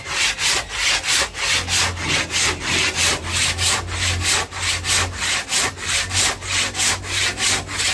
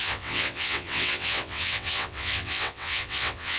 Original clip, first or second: first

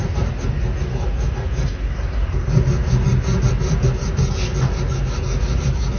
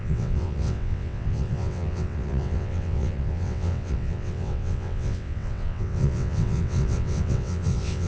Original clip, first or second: first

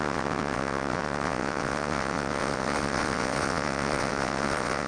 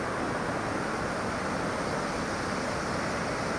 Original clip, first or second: second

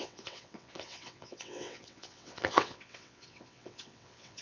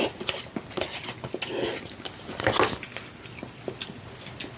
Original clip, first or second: second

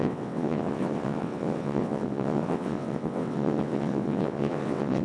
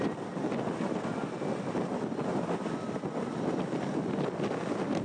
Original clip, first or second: second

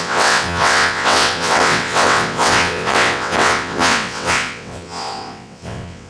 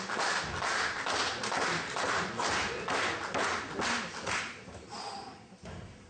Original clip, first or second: second